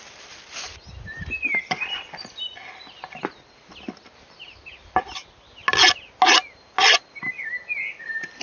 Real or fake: real